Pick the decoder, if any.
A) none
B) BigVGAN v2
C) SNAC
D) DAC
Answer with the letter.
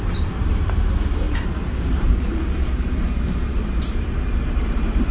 B